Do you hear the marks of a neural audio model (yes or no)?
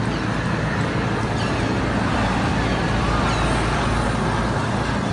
no